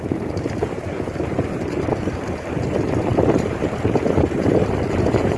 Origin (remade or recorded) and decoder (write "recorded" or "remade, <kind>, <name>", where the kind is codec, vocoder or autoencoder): remade, vocoder, BigVGAN v2